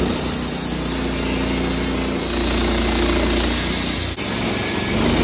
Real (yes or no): yes